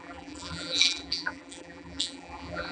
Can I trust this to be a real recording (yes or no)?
no